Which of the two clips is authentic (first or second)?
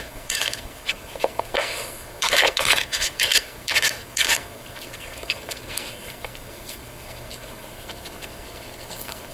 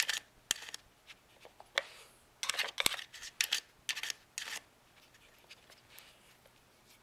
second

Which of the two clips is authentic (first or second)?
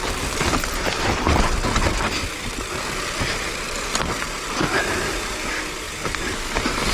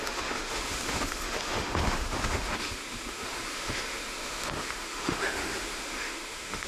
first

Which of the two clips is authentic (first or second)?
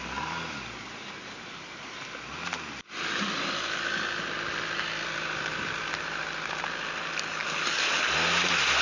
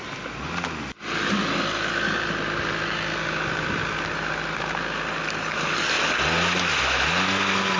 second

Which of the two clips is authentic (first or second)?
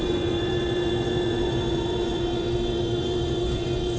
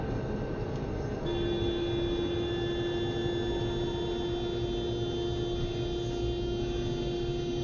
second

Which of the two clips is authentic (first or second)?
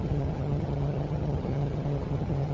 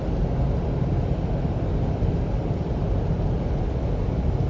second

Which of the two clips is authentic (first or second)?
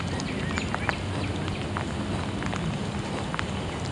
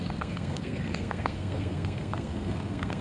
first